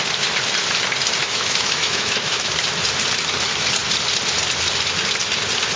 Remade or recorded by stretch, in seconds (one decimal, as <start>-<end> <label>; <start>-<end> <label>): 0.0-1.2 recorded; 1.2-2.5 remade; 2.5-5.8 recorded